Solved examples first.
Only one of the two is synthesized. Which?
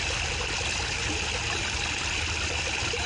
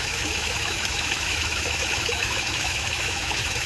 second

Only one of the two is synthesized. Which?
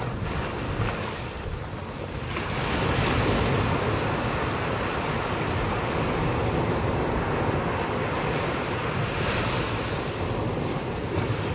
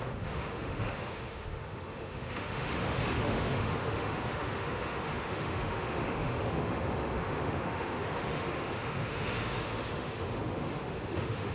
second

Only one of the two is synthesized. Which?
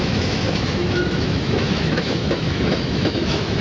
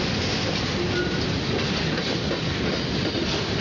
first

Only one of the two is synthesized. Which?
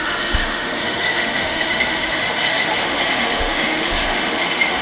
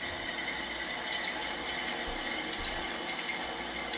first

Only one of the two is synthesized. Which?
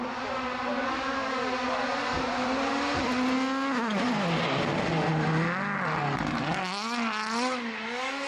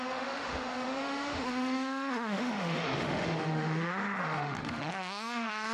second